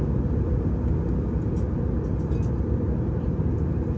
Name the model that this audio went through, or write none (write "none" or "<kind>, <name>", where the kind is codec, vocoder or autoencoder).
none